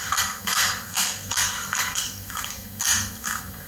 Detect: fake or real fake